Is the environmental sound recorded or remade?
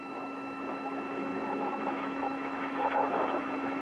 remade